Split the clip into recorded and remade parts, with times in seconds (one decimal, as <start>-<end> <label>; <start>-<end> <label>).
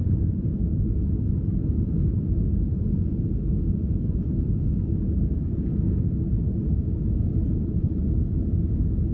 0.0-1.0 remade; 1.0-7.2 recorded; 7.2-8.0 remade; 8.0-9.1 recorded